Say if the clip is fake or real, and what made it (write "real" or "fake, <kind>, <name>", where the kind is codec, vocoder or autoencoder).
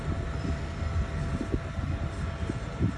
real